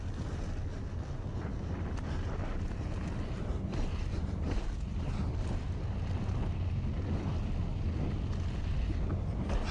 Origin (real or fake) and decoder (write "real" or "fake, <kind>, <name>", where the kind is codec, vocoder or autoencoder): real